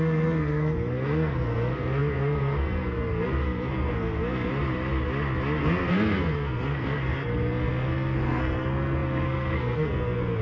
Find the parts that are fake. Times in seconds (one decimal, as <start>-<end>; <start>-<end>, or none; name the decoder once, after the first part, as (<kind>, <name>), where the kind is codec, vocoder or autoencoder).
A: 0.0-4.5 (codec, SNAC); 5.6-10.4